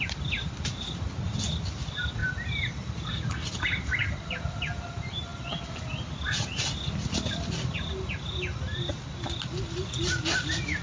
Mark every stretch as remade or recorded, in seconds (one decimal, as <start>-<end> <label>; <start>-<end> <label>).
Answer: 0.0-10.8 recorded